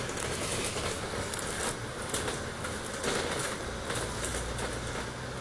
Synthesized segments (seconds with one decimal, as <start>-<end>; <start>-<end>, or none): none